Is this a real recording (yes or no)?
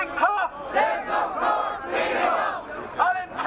yes